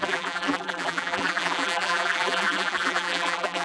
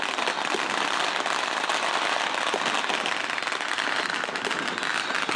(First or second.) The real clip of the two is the second